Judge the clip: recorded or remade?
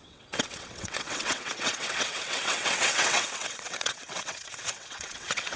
remade